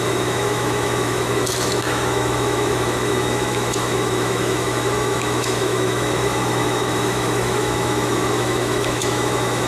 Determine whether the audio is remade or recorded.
remade